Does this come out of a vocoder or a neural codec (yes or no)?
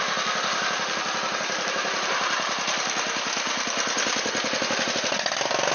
no